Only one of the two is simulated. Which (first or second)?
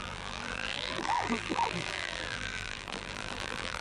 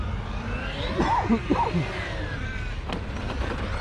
first